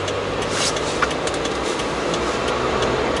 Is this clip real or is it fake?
real